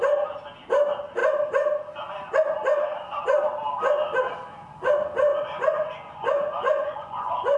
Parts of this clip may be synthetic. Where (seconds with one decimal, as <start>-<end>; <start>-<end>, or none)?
5.3-7.6